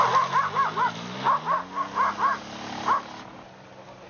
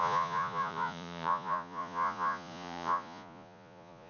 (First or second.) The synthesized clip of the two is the second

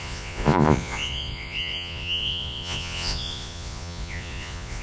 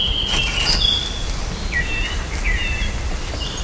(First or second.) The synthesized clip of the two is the first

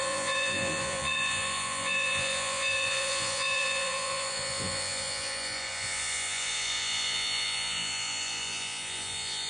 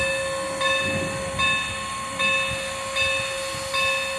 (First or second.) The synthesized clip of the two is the first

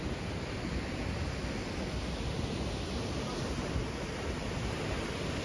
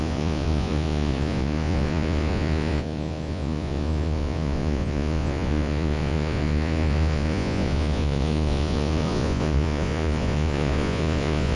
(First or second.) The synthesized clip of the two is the second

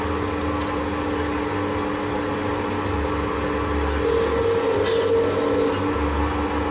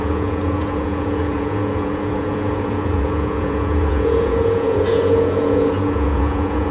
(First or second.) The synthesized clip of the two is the second